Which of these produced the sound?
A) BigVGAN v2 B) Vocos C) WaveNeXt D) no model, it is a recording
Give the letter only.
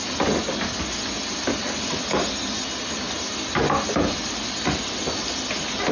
D